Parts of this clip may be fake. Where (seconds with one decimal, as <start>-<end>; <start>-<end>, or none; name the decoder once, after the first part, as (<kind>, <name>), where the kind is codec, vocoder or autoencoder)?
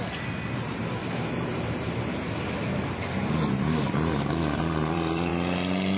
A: 0.0-1.0 (vocoder, BigVGAN v2); 4.6-5.3